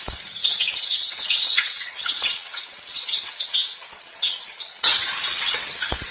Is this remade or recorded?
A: remade